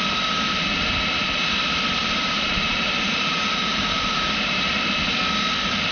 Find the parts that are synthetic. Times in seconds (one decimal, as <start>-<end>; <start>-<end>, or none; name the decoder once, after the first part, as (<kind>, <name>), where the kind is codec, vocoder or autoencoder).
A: 2.0-4.7 (vocoder, BigVGAN v2)